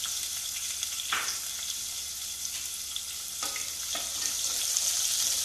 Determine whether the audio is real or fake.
real